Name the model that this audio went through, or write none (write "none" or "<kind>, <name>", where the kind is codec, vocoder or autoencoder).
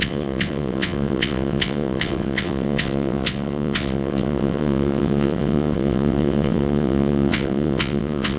vocoder, WaveNeXt